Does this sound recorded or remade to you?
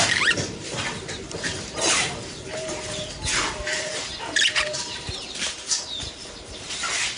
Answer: remade